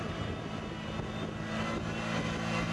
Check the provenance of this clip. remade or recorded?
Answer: recorded